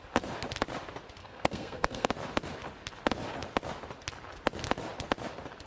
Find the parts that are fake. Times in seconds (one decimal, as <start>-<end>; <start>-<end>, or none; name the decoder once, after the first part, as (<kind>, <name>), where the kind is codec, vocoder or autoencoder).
1.2-2.1 (codec, SNAC)